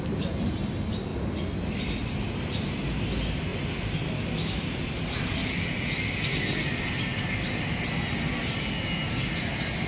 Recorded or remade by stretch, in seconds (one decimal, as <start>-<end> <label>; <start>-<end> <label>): 0.0-9.9 recorded